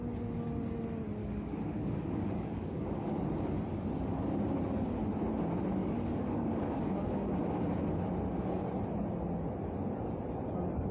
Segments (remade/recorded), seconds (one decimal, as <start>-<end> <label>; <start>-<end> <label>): 0.0-1.2 recorded; 1.2-3.2 remade; 3.2-5.8 recorded; 5.8-7.4 remade; 7.4-10.9 recorded